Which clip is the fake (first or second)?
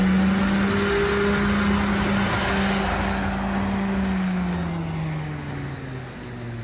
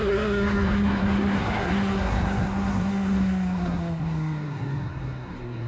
second